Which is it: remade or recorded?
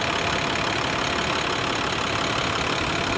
recorded